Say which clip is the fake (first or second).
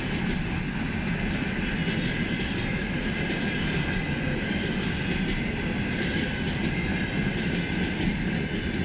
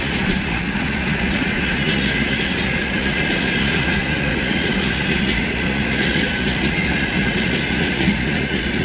second